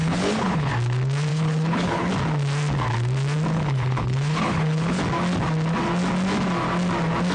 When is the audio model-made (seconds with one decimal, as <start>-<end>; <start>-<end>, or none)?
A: 0.0-0.7; 1.3-2.1; 3.5-5.0